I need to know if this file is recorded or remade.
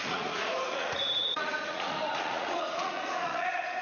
remade